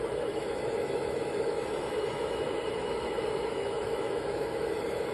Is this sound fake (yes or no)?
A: yes